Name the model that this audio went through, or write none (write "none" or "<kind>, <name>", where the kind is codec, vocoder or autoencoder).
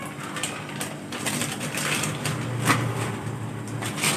vocoder, BigVGAN v2